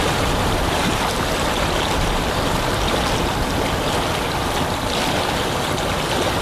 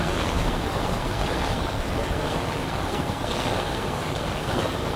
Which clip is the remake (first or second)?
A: second